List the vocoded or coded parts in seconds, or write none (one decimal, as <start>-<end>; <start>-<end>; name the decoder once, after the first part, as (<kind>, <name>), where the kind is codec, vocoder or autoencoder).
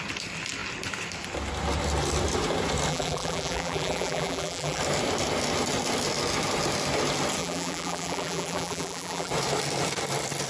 2.9-4.8 (vocoder, BigVGAN v2); 7.4-9.3